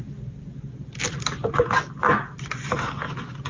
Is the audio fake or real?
real